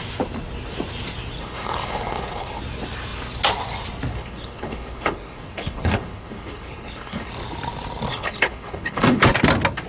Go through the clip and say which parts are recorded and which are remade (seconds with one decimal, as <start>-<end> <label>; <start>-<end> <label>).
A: 0.0-1.4 recorded; 1.4-2.6 remade; 2.6-4.1 recorded; 4.1-7.3 remade; 7.3-8.1 recorded; 8.1-9.2 remade; 9.2-9.9 recorded